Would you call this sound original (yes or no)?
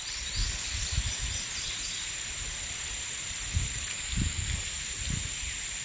yes